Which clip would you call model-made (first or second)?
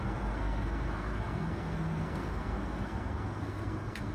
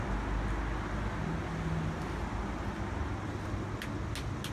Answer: first